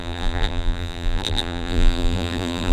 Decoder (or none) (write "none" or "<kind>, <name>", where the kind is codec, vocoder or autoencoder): vocoder, BigVGAN v2